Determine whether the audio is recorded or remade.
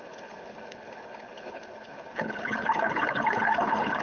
remade